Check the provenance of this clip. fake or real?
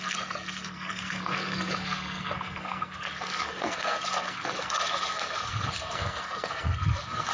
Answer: fake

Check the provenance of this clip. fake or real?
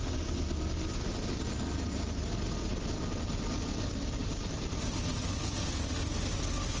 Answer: real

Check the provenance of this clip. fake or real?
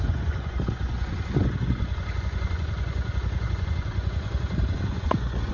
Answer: fake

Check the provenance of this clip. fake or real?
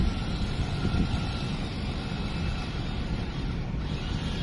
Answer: real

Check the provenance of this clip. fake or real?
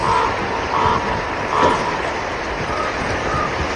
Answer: fake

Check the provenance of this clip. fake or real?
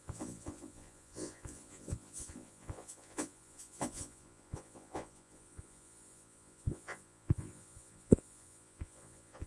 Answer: fake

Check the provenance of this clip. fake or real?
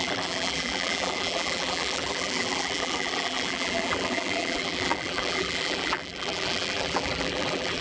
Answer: fake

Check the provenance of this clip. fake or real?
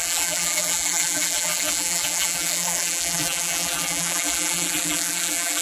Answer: fake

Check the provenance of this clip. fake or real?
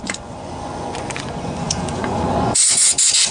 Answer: fake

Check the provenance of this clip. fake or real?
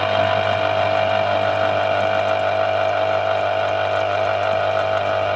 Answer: real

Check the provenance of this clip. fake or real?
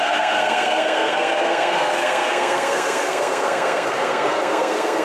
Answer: fake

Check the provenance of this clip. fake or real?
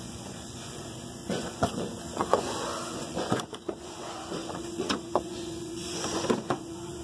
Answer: fake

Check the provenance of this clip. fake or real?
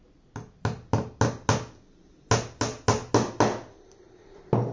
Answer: real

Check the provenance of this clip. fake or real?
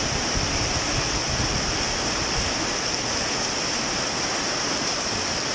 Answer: real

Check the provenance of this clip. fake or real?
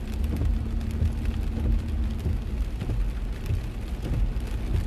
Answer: real